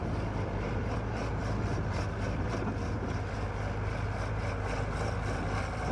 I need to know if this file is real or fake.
real